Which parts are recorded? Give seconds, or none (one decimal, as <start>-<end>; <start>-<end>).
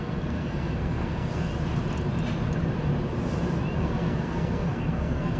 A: 1.5-3.8